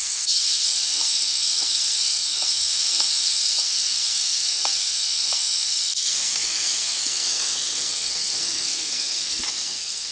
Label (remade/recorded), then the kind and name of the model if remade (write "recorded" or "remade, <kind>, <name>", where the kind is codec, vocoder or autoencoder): remade, codec, SNAC